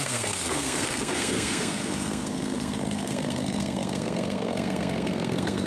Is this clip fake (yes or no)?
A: yes